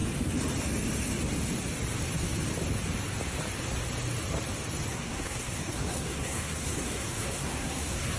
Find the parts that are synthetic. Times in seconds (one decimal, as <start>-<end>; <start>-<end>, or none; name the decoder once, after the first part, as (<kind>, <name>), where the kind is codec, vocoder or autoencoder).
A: 4.9-8.2 (codec, SNAC)